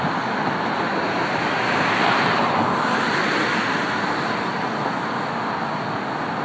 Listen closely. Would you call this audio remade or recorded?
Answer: recorded